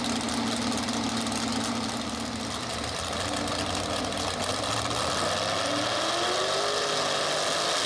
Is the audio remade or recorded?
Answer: recorded